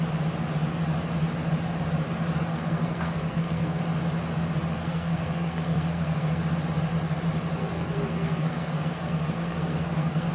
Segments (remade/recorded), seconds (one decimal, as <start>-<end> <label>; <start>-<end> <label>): 0.0-2.5 recorded; 2.5-3.8 remade; 3.8-4.7 recorded; 4.7-6.4 remade; 6.4-7.6 recorded; 7.6-10.3 remade